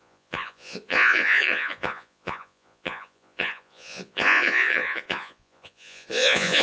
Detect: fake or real fake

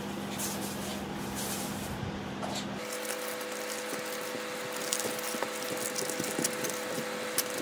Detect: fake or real real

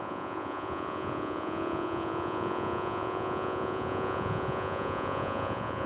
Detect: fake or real fake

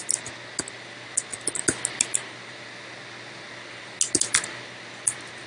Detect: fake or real real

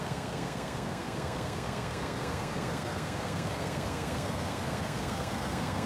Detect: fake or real fake